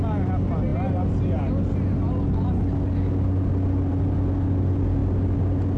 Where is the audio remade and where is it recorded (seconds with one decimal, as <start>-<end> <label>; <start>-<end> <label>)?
0.0-5.8 recorded